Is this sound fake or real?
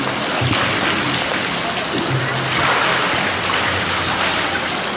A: real